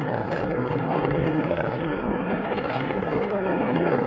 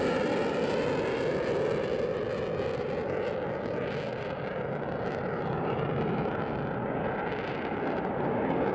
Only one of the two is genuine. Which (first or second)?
second